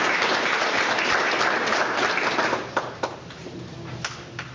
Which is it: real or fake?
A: real